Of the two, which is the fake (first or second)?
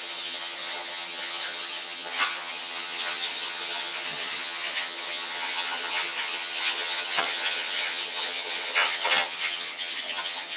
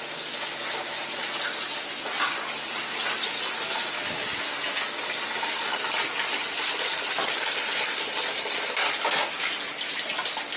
first